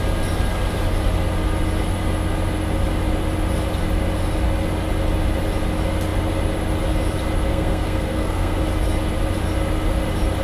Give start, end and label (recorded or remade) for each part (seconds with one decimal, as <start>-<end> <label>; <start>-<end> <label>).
0.0-7.5 recorded; 7.5-8.6 remade; 8.6-10.4 recorded